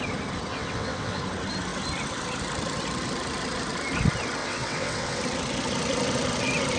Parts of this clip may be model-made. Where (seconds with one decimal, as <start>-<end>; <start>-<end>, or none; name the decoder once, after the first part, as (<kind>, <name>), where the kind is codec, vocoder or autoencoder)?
0.5-1.2 (vocoder, WaveNeXt); 4.4-5.2